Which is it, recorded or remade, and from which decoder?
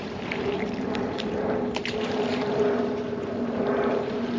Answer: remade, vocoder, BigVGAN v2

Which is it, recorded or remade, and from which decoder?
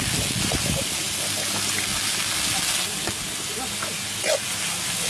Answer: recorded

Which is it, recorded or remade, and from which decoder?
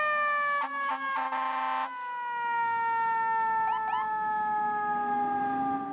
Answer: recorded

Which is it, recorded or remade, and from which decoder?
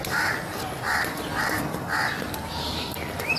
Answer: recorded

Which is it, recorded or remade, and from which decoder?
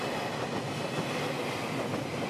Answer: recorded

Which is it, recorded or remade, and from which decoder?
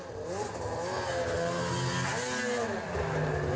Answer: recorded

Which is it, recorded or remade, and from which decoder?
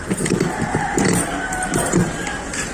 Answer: recorded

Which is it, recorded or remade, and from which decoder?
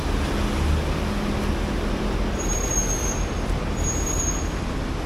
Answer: recorded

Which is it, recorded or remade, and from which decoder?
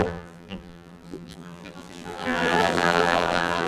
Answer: remade, vocoder, BigVGAN v2